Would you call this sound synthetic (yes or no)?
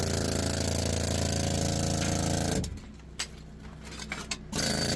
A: no